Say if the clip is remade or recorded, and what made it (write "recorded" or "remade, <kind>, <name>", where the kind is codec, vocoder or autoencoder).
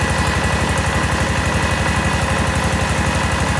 recorded